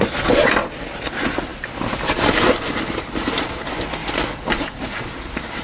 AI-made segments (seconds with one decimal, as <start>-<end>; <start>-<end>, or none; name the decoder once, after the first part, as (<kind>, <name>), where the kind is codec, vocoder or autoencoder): none